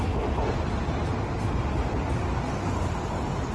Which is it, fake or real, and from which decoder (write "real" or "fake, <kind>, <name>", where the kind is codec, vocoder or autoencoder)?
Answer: real